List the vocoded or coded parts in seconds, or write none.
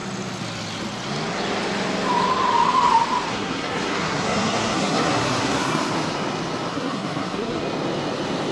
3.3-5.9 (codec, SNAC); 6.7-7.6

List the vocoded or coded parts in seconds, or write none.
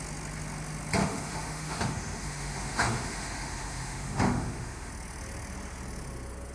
1.0-4.9 (autoencoder, DAC-VAE)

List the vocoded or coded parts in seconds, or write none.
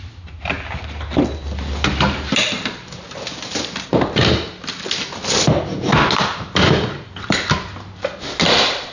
none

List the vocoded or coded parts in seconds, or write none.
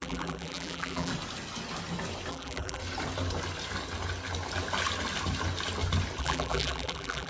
0.0-1.1 (vocoder, BigVGAN v2); 2.3-2.8; 6.2-7.3